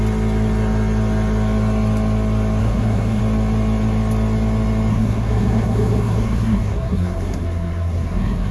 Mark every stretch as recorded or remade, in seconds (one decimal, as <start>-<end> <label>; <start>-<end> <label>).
0.0-2.6 recorded; 2.6-3.2 remade; 3.2-4.9 recorded; 4.9-8.5 remade